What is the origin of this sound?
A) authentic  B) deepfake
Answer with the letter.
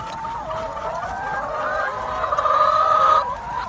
A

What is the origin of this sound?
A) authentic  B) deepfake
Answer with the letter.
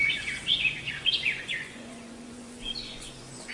B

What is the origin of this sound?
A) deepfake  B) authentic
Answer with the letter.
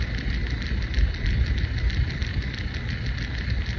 B